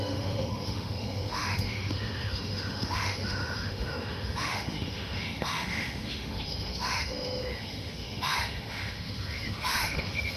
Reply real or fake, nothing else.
fake